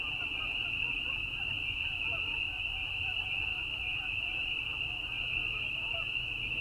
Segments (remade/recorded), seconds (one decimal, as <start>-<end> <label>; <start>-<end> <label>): 0.0-3.5 recorded; 3.5-4.2 remade; 4.2-6.6 recorded